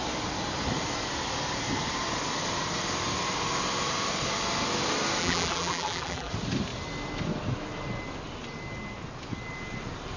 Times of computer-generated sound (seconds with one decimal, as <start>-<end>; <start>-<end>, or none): 5.2-6.3